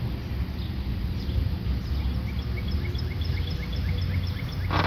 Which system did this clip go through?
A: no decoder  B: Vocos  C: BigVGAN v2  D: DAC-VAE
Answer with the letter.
A